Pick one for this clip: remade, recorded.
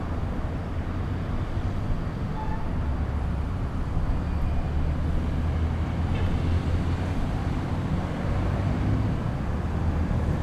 recorded